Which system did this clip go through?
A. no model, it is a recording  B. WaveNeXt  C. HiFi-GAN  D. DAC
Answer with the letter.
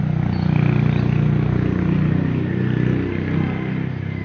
A